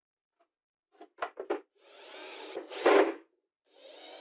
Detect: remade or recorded recorded